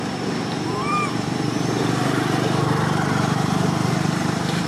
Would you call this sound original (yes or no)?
no